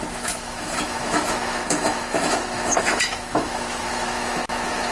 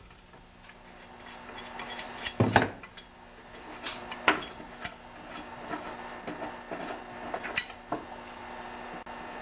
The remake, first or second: first